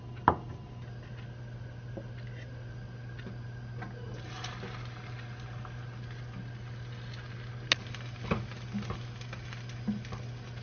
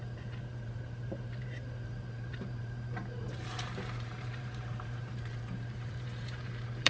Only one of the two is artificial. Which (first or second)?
second